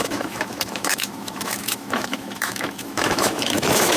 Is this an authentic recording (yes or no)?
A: no